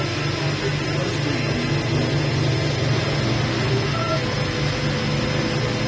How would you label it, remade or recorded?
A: recorded